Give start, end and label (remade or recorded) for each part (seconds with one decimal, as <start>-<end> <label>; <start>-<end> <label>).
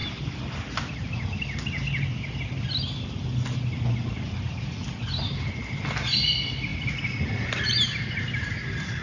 0.0-9.0 recorded